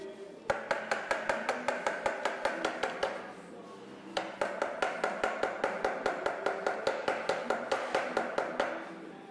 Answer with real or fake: real